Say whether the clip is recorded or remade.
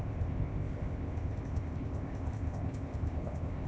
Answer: remade